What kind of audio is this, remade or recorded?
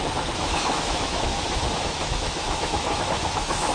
remade